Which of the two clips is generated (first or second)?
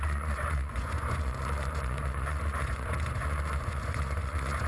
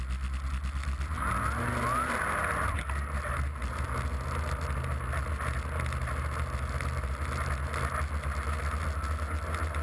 first